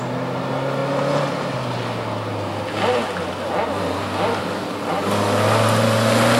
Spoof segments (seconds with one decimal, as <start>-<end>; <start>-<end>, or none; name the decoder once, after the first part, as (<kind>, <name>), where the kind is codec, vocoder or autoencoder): none